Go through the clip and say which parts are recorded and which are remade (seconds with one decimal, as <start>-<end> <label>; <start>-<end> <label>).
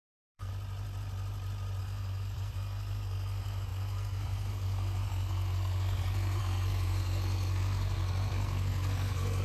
0.0-0.5 remade; 0.5-1.8 recorded; 1.8-9.4 remade